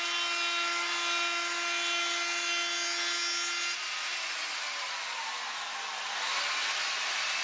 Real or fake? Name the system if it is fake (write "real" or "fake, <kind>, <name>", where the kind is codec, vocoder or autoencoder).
real